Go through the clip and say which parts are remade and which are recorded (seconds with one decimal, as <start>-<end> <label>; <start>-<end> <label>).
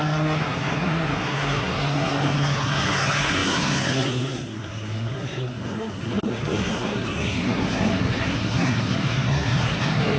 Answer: 0.0-10.2 remade